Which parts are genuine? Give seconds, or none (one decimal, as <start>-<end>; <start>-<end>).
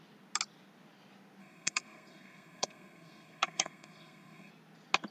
0.0-1.4; 4.5-5.1